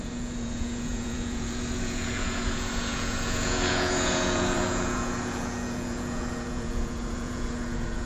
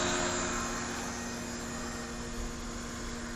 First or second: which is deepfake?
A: first